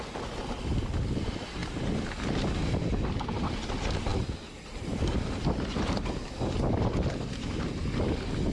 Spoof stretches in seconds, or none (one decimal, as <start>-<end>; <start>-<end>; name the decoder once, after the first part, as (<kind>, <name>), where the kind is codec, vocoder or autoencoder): none